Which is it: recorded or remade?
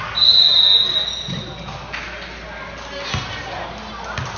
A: recorded